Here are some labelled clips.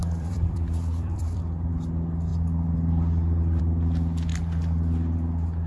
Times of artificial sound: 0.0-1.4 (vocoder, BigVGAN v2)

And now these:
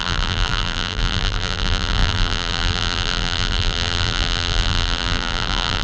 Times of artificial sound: 0.0-5.8 (vocoder, BigVGAN v2)

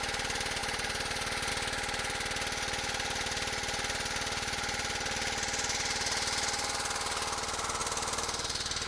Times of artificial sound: 0.6-1.5 (vocoder, BigVGAN v2); 7.8-8.9

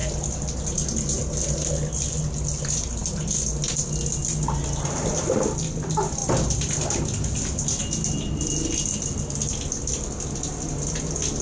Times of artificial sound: none

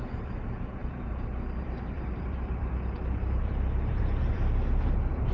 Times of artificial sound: 0.0-5.3 (vocoder, BigVGAN v2)